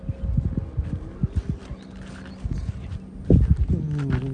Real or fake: real